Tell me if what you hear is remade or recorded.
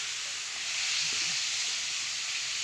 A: recorded